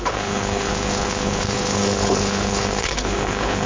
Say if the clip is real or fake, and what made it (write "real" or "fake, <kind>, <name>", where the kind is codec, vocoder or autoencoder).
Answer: fake, codec, HILCodec